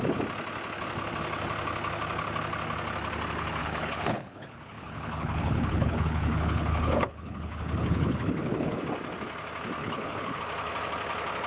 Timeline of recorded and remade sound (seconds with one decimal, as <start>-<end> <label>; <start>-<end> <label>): 0.0-3.6 recorded; 3.6-8.8 remade; 8.8-9.8 recorded; 9.8-10.4 remade; 10.4-11.5 recorded